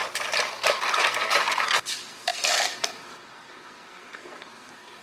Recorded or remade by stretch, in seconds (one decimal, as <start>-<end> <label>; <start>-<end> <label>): 0.0-0.5 recorded; 0.5-5.0 remade